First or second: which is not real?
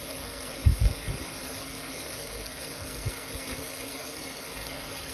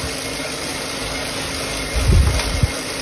first